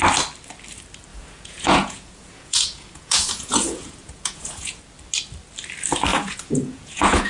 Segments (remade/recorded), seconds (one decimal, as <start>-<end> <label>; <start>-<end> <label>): 0.0-1.1 recorded; 1.1-4.8 remade; 4.8-6.1 recorded; 6.1-7.3 remade